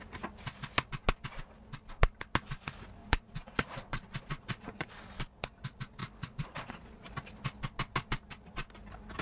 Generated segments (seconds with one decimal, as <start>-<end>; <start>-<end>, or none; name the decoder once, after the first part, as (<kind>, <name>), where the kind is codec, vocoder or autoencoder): 3.0-5.1 (vocoder, Vocos); 6.0-7.1